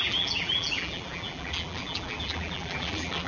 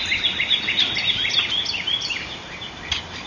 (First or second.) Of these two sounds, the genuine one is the second